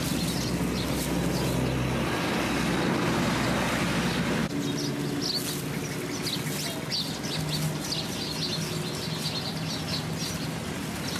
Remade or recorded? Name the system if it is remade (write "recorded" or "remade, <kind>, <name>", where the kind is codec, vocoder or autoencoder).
recorded